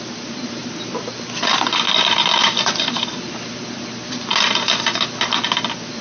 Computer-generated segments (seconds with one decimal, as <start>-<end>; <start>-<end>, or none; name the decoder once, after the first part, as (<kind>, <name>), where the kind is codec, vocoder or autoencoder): 0.0-6.0 (vocoder, BigVGAN v2)